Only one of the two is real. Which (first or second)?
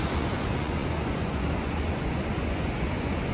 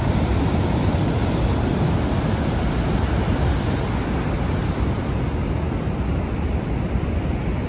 second